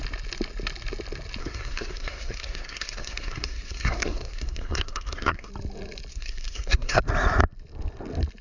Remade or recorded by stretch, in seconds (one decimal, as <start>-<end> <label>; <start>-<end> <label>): 0.0-1.4 recorded; 1.4-5.5 remade; 5.5-6.1 recorded; 6.1-7.0 remade; 7.0-8.4 recorded